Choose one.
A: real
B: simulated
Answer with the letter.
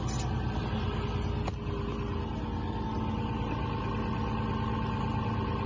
A